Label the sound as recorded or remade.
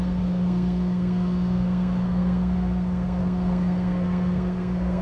remade